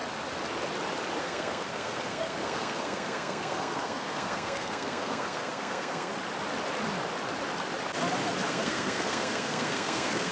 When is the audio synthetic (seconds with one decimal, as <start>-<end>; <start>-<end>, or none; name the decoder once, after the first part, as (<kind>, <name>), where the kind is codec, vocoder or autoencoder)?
1.2-6.1 (codec, SNAC); 8.5-10.3